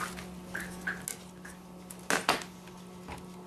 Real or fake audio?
real